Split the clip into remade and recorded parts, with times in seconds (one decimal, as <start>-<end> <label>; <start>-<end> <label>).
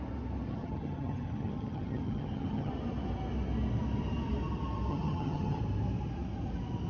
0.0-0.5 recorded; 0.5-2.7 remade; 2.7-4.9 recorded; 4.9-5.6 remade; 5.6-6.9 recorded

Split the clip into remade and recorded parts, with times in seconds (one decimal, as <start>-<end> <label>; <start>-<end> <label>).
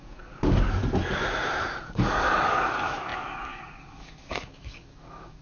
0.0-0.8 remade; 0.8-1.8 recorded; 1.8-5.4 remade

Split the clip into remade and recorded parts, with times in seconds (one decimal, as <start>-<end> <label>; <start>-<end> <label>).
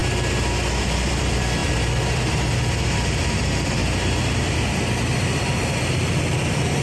0.0-0.8 recorded; 0.8-3.8 remade; 3.8-4.4 recorded; 4.4-6.8 remade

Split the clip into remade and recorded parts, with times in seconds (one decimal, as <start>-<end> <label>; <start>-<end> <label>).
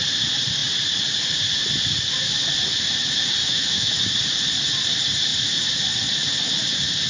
0.0-3.4 recorded; 3.4-4.0 remade; 4.0-7.1 recorded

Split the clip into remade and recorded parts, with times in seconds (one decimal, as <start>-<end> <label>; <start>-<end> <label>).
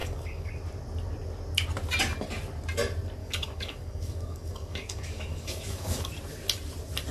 0.0-0.5 remade; 0.5-3.2 recorded; 3.2-6.1 remade; 6.1-7.1 recorded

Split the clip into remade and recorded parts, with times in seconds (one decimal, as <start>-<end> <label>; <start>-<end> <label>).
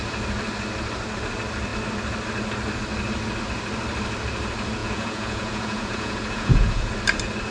0.0-4.8 recorded; 4.8-6.9 remade; 6.9-7.5 recorded